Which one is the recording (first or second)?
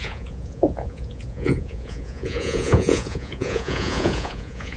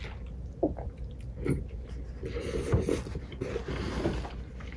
second